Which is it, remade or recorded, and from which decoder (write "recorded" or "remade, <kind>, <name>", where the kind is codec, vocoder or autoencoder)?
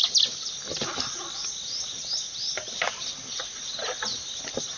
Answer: recorded